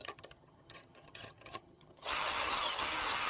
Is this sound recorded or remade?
remade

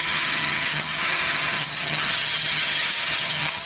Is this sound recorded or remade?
remade